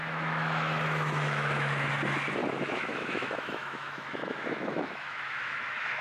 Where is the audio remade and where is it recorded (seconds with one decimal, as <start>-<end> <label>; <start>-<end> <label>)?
0.0-1.9 remade; 1.9-2.4 recorded; 2.4-6.0 remade